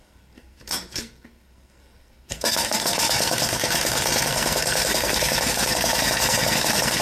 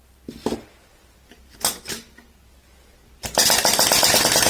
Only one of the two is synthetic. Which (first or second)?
first